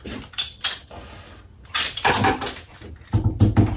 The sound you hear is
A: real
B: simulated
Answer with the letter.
A